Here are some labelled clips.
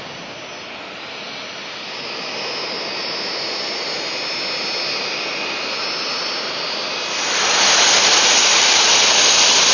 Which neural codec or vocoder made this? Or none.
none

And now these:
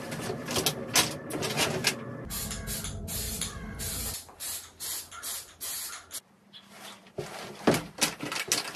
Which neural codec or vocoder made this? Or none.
none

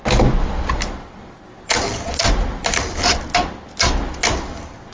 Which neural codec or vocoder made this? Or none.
none